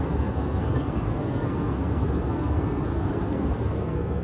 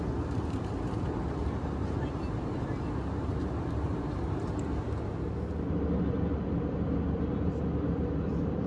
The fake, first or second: first